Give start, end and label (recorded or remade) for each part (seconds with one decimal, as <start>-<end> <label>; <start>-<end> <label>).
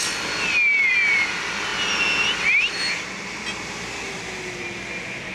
0.0-5.3 recorded